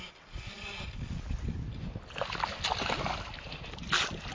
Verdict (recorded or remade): recorded